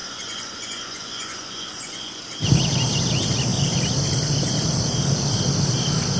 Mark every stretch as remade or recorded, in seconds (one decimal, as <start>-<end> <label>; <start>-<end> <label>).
0.0-2.2 remade; 2.2-6.2 recorded